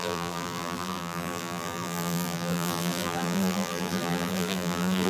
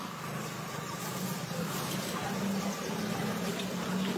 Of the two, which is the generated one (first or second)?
first